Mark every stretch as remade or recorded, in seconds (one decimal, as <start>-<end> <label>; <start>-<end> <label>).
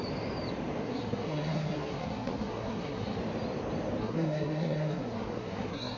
0.0-0.8 recorded; 0.8-3.2 remade; 3.2-4.0 recorded; 4.0-6.0 remade